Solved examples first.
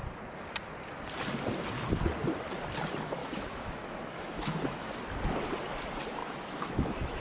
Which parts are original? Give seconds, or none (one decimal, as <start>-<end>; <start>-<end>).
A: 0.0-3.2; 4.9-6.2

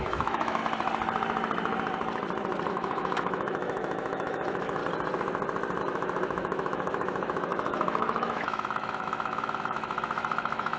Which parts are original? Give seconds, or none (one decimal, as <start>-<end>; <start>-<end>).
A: 0.6-2.7; 4.8-5.8

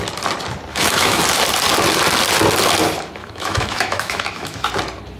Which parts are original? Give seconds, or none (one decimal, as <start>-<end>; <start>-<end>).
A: 0.0-0.7; 1.2-3.2; 4.7-5.2

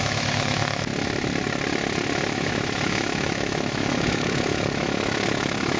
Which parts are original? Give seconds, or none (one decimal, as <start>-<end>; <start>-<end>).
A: 0.9-2.3

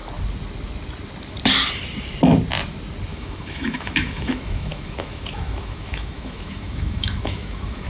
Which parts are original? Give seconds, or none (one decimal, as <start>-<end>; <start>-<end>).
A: 0.0-3.1